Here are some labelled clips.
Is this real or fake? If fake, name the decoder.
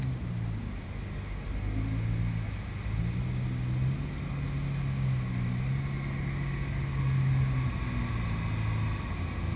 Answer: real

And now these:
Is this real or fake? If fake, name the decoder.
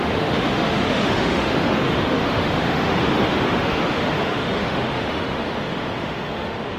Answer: fake, autoencoder, DAC-VAE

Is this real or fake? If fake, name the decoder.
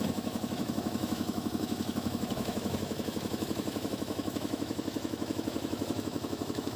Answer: fake, autoencoder, DAC-VAE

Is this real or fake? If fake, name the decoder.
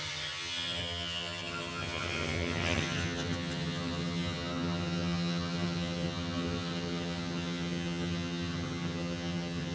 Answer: fake, vocoder, HiFi-GAN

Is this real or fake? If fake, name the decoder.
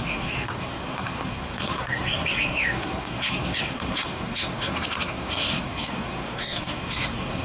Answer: fake, codec, SNAC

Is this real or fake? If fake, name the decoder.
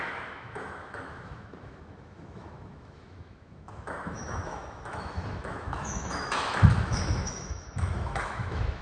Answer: fake, autoencoder, DAC-VAE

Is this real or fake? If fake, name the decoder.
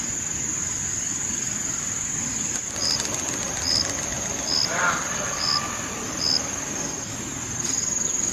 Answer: real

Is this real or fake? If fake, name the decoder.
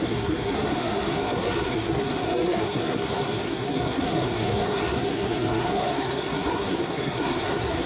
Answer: fake, codec, SNAC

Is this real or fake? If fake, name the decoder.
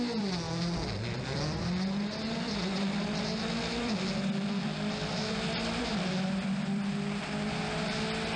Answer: real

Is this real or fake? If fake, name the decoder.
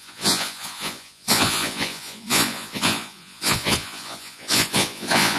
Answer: fake, vocoder, Vocos